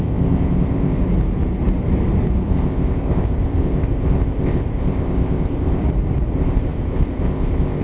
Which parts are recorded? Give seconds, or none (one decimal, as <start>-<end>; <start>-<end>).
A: 1.0-2.5; 5.8-6.3